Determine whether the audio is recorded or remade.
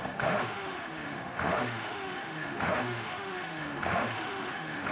remade